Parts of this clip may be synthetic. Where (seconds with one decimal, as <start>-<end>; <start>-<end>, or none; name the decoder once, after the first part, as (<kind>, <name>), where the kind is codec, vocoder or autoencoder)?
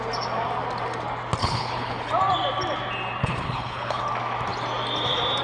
1.4-2.1 (codec, HILCodec); 3.2-4.0